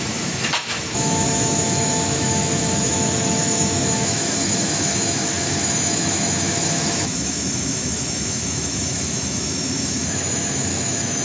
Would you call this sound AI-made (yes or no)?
yes